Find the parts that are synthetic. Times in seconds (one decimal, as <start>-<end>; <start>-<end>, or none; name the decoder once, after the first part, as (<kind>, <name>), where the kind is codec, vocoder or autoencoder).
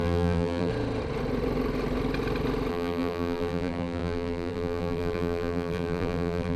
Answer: 0.0-0.7 (vocoder, BigVGAN v2); 2.7-6.6